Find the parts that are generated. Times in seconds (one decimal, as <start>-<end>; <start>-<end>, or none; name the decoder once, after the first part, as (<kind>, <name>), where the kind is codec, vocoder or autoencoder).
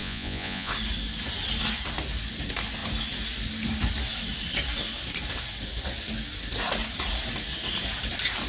0.0-0.7 (vocoder, Vocos)